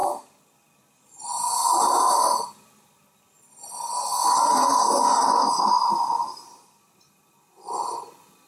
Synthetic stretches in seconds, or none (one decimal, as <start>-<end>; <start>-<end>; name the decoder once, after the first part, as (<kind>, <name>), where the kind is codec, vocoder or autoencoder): none